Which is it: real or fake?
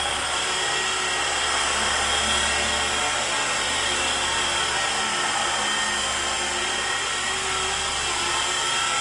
real